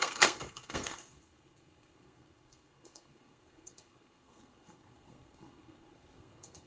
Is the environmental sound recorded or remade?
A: remade